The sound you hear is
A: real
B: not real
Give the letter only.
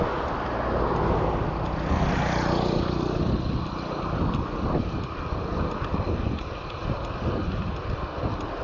A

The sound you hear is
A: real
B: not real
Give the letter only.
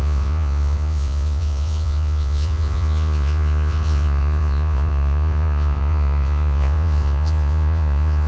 B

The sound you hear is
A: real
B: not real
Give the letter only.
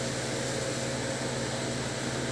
A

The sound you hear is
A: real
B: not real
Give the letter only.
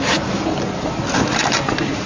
A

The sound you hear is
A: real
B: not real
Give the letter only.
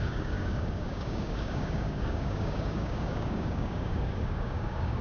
B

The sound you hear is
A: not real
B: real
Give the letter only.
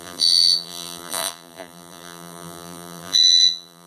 A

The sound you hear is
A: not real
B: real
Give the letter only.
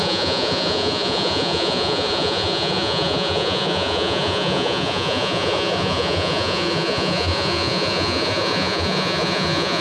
A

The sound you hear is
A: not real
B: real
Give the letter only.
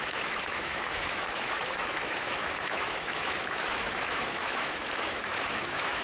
A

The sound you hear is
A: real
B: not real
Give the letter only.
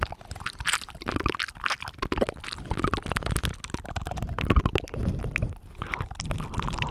A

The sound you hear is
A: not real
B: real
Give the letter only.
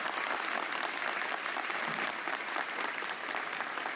B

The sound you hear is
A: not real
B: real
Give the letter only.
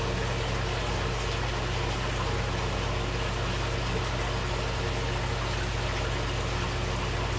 B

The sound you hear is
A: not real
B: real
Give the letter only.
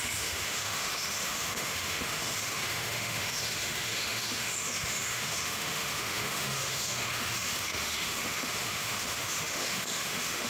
A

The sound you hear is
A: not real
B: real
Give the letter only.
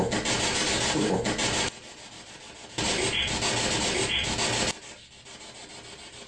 B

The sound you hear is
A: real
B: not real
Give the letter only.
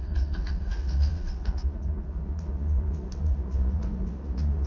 B